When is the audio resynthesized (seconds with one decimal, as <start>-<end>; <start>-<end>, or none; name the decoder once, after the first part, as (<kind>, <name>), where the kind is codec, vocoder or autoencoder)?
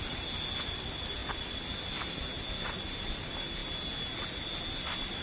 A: none